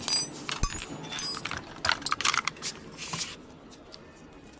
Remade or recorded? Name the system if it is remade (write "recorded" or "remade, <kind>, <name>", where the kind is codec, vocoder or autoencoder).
recorded